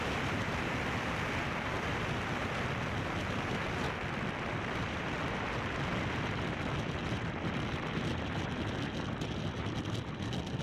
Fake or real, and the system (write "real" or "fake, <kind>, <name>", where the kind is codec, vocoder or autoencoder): real